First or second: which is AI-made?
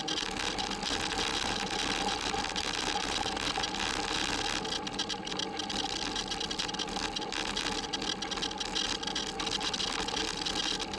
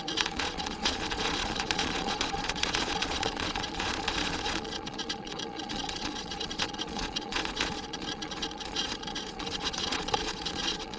second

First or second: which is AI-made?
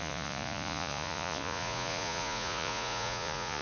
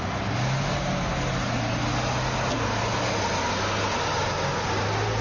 first